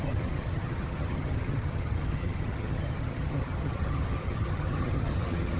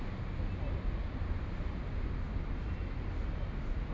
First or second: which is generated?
first